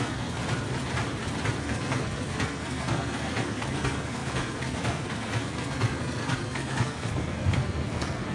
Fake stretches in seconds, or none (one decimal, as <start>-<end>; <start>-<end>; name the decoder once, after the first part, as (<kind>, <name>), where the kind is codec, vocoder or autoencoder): 0.0-0.4 (codec, SNAC); 1.6-8.3